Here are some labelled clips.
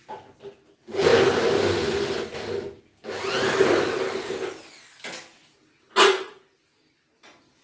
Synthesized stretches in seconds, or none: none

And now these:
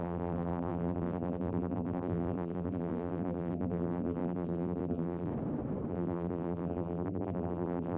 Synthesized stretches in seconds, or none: 0.0-5.3 (vocoder, BigVGAN v2); 5.9-8.0